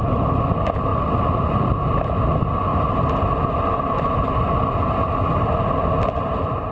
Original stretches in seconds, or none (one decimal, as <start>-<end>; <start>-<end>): 0.0-6.7